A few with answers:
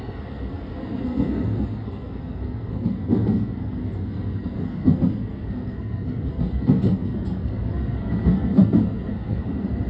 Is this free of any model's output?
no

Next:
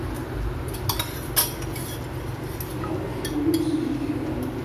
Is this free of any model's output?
yes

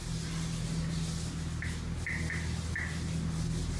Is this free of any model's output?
yes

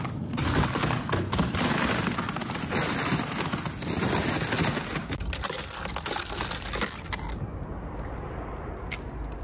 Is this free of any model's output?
yes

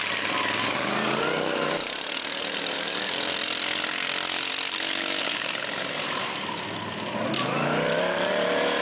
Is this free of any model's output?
yes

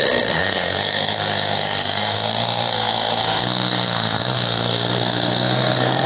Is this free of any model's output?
no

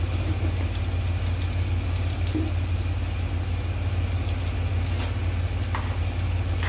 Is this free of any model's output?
yes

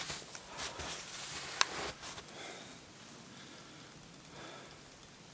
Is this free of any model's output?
yes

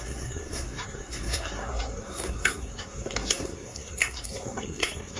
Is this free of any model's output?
no